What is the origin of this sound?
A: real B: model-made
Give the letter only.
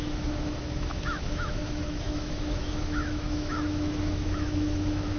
B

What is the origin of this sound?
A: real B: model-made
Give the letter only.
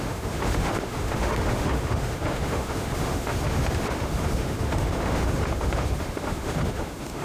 B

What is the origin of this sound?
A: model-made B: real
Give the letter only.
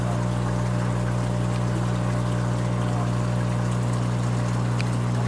B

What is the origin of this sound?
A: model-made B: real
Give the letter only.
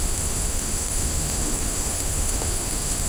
A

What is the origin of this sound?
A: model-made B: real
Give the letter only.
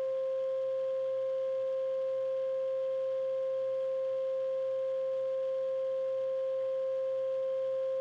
B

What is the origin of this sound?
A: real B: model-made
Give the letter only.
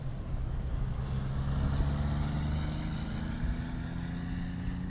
A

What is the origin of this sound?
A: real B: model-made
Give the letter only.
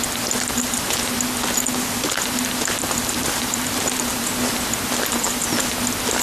A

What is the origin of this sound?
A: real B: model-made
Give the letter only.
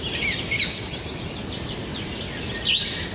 A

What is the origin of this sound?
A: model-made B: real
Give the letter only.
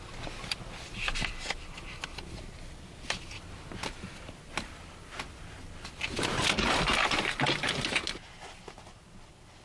B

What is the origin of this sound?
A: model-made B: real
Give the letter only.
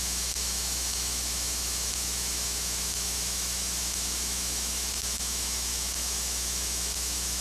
A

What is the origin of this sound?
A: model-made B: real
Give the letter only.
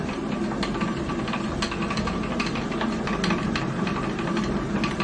B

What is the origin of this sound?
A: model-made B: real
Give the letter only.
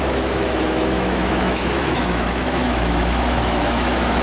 A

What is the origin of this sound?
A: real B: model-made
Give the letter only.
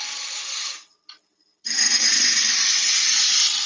A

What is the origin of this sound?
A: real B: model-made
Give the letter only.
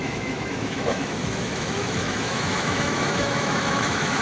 B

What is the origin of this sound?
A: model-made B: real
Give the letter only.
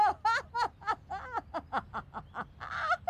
B